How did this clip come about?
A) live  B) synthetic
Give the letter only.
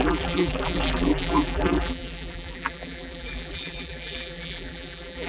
B